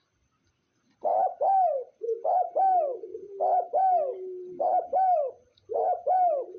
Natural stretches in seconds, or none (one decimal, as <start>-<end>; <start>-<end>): 0.0-1.1; 2.3-4.1; 5.4-6.6